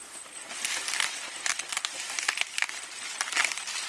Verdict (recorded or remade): recorded